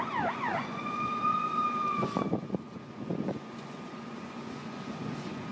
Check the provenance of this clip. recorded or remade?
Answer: remade